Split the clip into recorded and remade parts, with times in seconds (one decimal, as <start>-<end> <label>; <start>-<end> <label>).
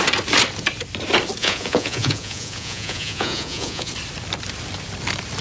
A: 0.0-1.4 recorded; 1.4-3.9 remade; 3.9-5.4 recorded